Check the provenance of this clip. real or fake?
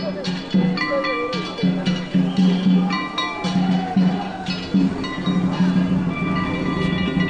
real